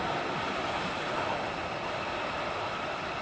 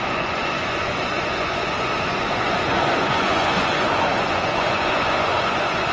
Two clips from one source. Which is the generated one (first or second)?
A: second